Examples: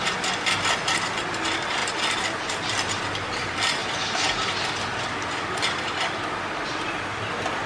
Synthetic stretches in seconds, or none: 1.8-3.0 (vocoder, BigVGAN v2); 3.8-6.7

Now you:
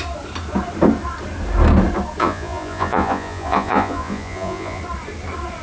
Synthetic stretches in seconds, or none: 2.2-4.8 (vocoder, Vocos)

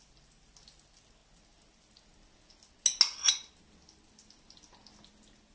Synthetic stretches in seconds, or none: none